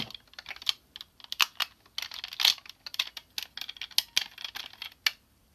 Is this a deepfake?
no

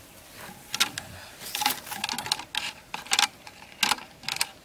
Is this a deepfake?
no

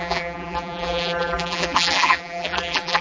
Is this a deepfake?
yes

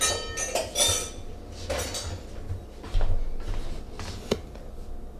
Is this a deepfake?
no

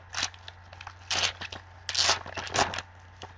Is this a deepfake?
no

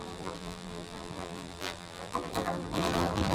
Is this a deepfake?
yes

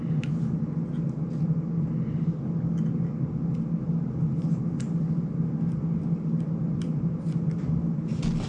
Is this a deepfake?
no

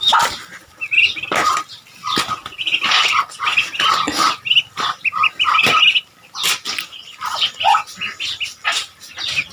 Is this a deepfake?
no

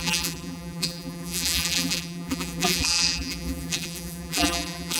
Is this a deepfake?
yes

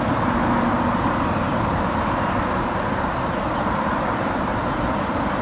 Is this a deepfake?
yes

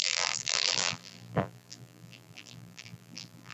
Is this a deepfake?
yes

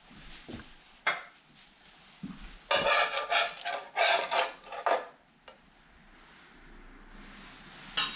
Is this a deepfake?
no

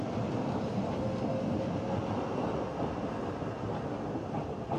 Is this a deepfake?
no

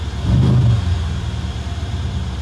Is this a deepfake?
yes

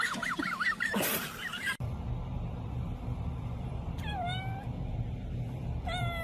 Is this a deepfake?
yes